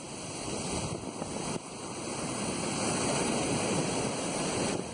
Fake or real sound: real